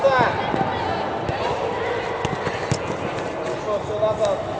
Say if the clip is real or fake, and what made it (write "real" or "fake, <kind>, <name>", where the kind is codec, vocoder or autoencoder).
real